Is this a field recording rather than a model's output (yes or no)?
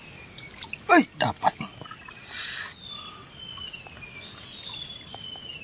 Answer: yes